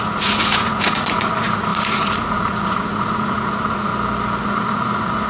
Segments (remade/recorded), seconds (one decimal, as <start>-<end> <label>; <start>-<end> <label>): 0.0-3.9 remade; 3.9-4.6 recorded; 4.6-5.3 remade